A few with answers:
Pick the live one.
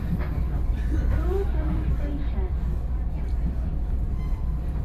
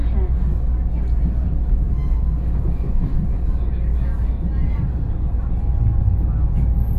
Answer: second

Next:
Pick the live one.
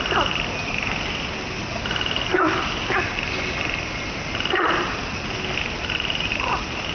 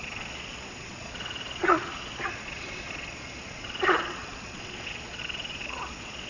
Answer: first